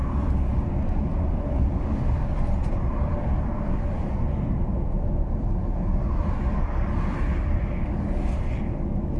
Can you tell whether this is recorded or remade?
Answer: recorded